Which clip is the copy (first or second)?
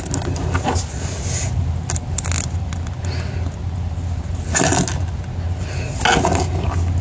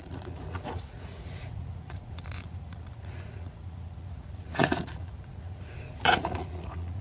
second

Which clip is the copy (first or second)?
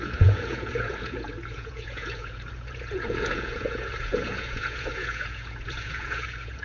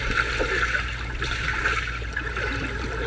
first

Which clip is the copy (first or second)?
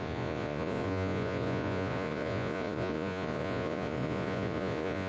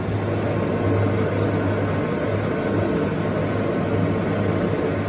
first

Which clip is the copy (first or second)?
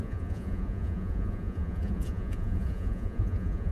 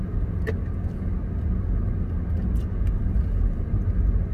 first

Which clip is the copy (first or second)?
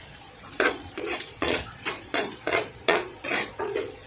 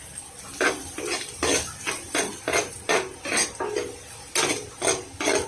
first